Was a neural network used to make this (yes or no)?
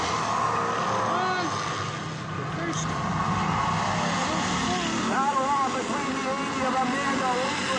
no